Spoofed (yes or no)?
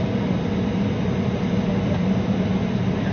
no